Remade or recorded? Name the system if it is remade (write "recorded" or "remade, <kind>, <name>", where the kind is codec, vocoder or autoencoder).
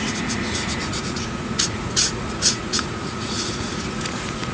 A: remade, vocoder, Vocos